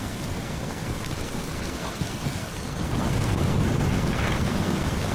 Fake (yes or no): yes